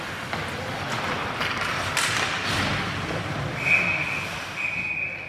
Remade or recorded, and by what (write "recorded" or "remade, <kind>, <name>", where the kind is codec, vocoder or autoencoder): recorded